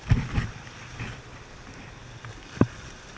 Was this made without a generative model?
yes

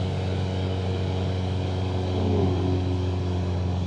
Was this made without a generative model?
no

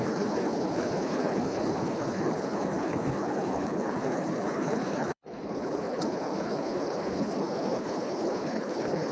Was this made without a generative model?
no